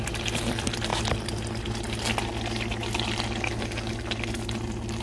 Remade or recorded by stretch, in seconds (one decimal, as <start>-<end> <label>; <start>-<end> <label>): 0.0-5.0 recorded

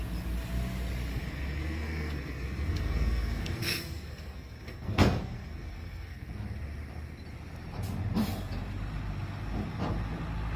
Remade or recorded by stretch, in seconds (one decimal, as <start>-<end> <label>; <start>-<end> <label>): 0.0-1.1 recorded; 1.1-6.3 remade; 6.3-10.6 recorded

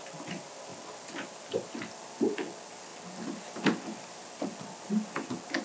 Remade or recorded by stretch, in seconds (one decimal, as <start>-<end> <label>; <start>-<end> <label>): 0.0-5.6 recorded